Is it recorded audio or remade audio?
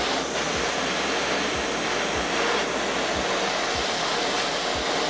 recorded